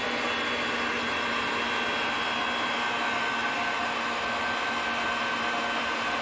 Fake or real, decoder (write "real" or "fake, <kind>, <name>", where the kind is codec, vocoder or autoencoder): real